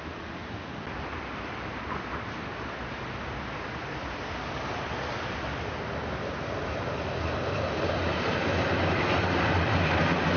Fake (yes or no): no